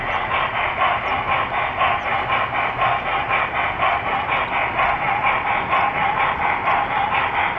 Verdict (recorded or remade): recorded